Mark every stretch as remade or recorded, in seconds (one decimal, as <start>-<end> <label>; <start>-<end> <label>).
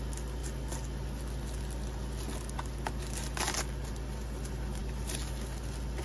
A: 0.0-6.0 recorded